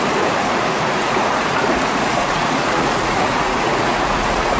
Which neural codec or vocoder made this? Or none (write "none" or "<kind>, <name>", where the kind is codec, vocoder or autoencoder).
vocoder, Vocos